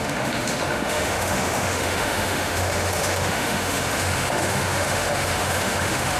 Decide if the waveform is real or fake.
fake